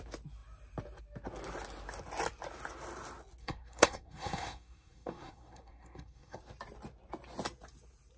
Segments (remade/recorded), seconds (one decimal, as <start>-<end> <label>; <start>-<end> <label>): 0.0-3.4 recorded; 3.4-6.4 remade; 6.4-8.2 recorded